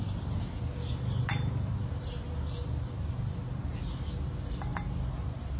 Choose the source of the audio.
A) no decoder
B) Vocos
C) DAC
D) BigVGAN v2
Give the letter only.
A